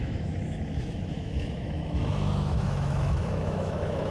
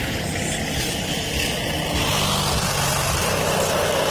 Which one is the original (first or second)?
second